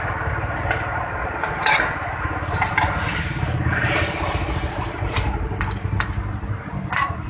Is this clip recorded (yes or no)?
yes